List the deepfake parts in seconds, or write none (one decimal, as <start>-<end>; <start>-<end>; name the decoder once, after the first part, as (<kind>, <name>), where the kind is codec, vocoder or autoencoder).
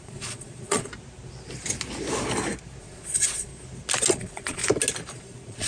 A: 0.0-0.9 (vocoder, Vocos); 2.8-3.5; 4.1-4.6; 5.1-5.7